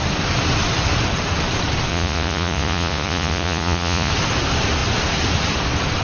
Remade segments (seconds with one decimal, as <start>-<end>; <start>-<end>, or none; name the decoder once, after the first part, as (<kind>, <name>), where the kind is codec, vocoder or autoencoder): 1.9-4.1 (vocoder, Vocos)